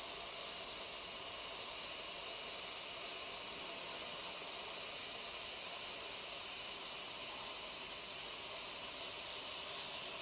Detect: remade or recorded recorded